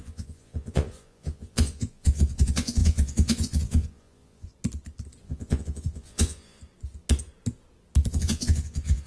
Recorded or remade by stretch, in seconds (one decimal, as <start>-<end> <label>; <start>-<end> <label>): 0.0-4.5 remade; 4.5-5.2 recorded; 5.2-6.6 remade; 6.6-8.1 recorded; 8.1-9.1 remade